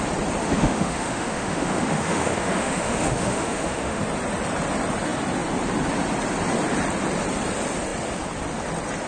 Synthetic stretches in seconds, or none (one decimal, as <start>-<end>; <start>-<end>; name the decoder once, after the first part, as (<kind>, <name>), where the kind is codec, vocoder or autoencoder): 0.4-4.0 (autoencoder, DAC-VAE)